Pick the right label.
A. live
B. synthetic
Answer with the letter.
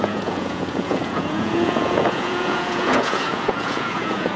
B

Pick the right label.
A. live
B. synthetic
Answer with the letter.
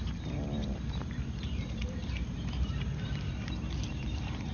B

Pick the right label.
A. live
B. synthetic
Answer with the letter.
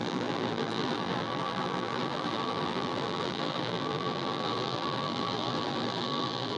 B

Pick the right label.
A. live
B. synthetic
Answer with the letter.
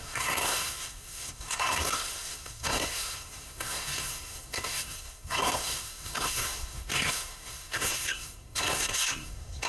B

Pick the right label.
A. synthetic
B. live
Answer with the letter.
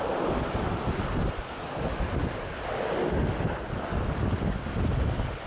B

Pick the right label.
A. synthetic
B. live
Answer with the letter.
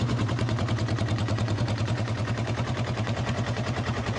A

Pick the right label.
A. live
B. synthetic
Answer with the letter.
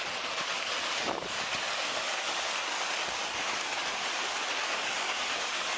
B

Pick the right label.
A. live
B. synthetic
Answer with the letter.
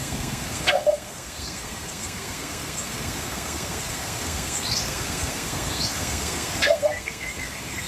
B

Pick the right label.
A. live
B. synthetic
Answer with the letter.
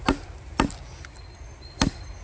A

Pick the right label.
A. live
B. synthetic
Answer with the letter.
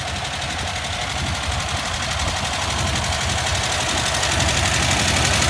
A